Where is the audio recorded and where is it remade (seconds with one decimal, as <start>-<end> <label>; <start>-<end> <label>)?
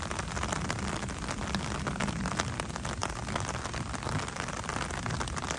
0.0-3.0 recorded; 3.0-4.9 remade; 4.9-5.6 recorded